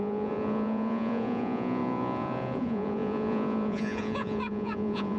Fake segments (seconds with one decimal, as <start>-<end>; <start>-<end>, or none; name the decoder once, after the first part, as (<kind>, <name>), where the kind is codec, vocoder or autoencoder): 0.0-5.2 (vocoder, Vocos)